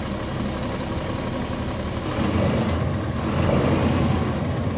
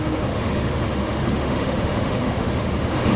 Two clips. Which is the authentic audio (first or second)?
first